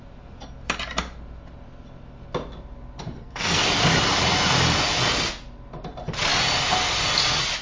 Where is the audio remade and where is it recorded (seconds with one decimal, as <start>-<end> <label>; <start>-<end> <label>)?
0.0-3.0 recorded; 3.0-3.6 remade; 3.6-7.6 recorded